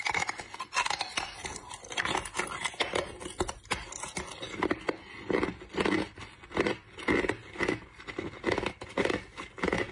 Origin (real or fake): real